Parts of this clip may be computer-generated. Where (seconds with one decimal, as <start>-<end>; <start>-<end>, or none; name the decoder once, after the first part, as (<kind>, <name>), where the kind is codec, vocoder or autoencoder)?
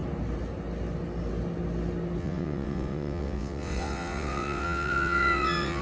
2.2-5.8 (vocoder, WaveNeXt)